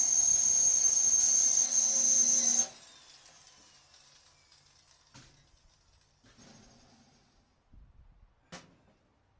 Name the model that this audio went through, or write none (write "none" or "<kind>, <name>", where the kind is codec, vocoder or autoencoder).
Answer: none